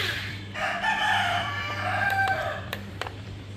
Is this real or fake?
fake